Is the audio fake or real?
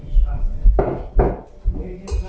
real